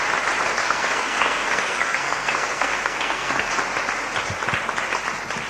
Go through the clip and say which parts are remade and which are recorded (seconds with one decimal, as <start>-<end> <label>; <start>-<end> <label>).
0.0-0.6 recorded; 0.6-3.5 remade; 3.5-5.5 recorded